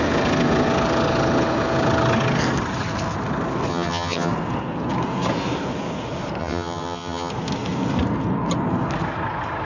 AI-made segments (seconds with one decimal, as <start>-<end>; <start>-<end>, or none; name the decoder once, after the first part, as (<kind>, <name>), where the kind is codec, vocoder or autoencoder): 3.7-4.3 (vocoder, HiFi-GAN); 6.4-7.3